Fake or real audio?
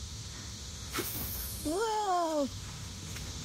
fake